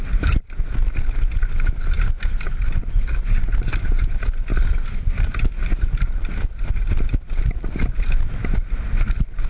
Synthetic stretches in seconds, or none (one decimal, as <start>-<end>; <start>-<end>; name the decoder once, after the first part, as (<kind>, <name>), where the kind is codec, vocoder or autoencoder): 4.5-5.0 (vocoder, BigVGAN v2)